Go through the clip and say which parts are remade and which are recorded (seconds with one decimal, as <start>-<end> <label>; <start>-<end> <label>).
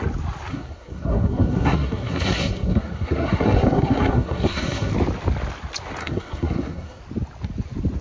0.0-0.5 recorded; 0.5-4.9 remade; 4.9-6.0 recorded; 6.0-7.0 remade; 7.0-8.0 recorded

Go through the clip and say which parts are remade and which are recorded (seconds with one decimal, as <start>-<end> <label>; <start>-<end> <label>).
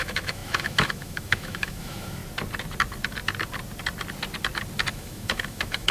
0.0-2.2 remade; 2.2-4.9 recorded; 4.9-5.9 remade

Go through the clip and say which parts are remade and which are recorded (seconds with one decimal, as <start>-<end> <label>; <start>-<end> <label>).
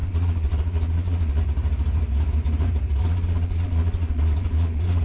0.0-1.4 remade; 1.4-3.0 recorded; 3.0-5.0 remade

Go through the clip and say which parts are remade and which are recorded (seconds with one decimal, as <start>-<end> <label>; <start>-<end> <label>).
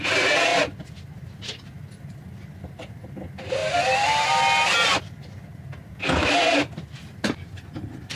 0.0-8.2 recorded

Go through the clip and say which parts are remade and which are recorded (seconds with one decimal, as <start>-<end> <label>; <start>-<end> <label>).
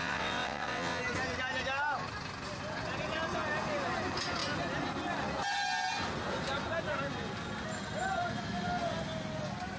0.0-1.0 remade; 1.0-9.8 recorded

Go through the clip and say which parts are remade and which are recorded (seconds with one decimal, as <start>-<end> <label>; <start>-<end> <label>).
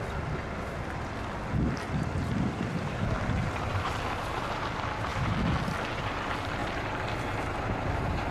0.0-8.3 recorded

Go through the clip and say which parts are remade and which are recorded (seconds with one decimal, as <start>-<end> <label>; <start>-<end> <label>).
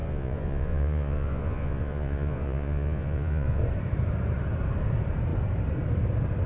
0.0-3.6 remade; 3.6-6.5 recorded